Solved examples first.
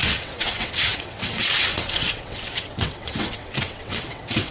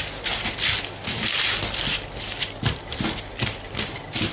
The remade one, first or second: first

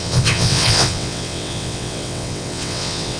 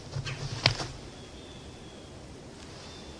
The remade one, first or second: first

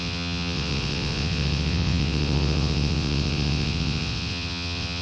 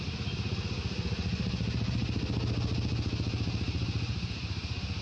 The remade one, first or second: first